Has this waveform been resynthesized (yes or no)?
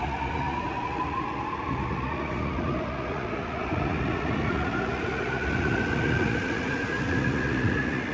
yes